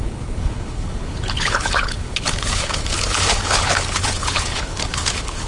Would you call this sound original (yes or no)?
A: no